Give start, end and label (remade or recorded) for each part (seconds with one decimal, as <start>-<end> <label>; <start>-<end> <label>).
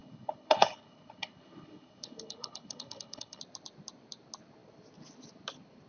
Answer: 0.0-3.4 remade; 3.4-5.9 recorded